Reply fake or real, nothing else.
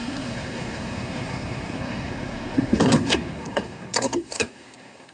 fake